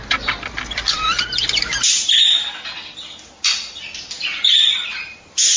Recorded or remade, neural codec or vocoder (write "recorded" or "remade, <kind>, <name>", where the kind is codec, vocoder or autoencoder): recorded